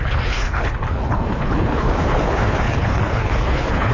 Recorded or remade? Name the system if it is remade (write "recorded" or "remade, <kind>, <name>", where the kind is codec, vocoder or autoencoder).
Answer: remade, codec, HILCodec